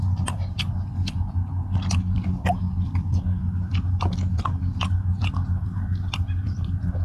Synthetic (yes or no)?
no